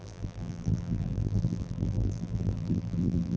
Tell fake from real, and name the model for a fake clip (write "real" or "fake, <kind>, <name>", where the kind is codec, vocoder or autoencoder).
fake, vocoder, BigVGAN v2